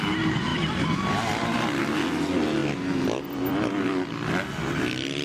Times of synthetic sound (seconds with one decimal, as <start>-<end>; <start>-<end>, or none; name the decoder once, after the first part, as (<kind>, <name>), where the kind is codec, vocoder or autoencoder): none